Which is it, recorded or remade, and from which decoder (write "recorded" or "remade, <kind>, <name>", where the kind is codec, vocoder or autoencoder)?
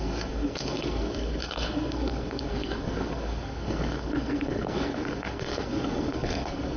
remade, codec, SNAC